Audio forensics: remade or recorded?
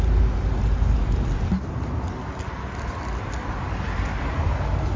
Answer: recorded